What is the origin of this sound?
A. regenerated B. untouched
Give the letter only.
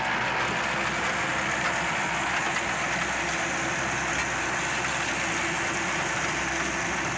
B